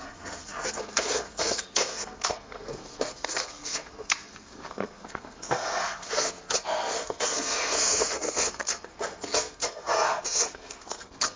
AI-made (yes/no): yes